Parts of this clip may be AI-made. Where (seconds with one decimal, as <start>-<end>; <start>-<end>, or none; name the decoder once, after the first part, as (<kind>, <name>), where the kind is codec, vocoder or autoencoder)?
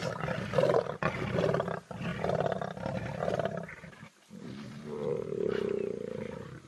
none